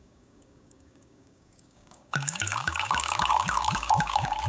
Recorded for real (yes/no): no